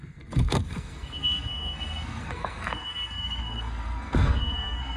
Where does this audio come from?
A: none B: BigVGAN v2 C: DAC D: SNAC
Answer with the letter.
D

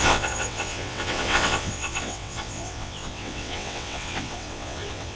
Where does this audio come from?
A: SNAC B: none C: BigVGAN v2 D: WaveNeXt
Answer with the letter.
D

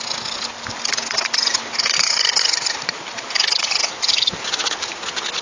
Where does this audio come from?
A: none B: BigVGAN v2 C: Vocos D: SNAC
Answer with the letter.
A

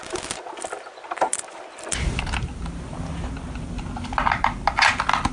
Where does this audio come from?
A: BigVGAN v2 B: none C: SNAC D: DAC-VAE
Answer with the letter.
B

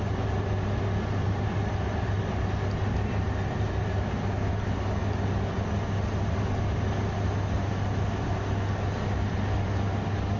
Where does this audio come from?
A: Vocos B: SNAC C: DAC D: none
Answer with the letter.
D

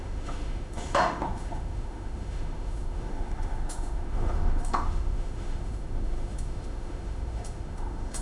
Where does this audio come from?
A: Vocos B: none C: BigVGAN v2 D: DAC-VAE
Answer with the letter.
D